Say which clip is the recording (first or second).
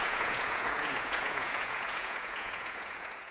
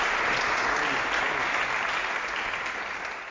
second